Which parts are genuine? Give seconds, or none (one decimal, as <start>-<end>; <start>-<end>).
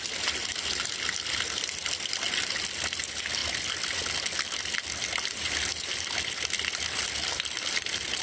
0.0-8.2